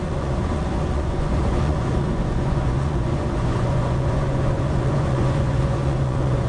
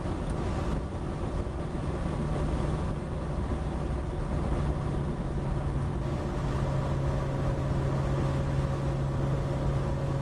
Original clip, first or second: second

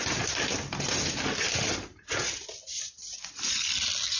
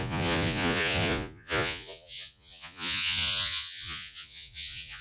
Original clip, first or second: first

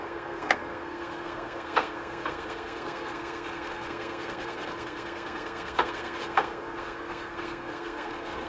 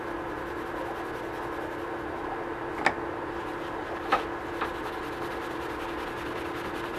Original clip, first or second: second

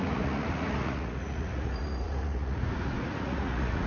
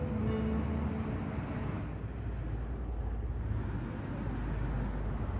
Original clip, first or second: second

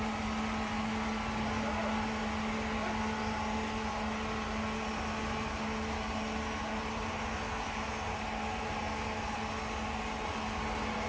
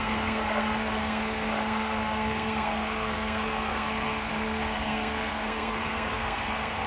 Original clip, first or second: first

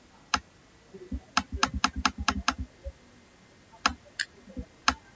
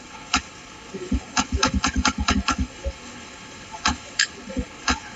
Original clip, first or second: first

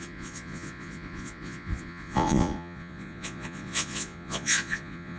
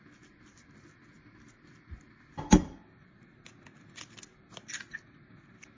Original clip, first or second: second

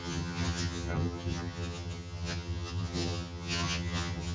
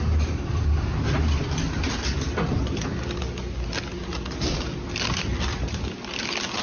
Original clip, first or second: second